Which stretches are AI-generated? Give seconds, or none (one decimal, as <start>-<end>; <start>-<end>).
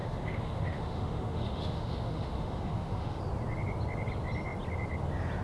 0.0-3.2